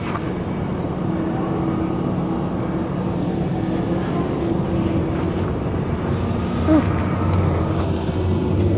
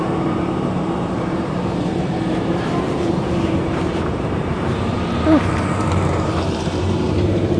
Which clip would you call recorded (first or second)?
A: first